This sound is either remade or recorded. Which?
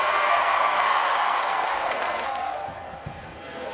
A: remade